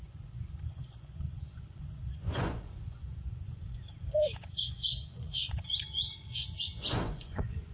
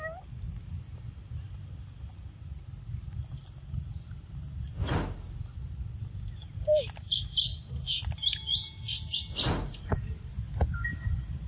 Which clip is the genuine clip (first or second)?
second